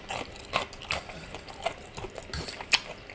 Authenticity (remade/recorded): recorded